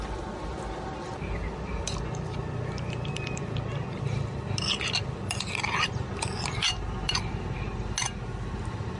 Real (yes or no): yes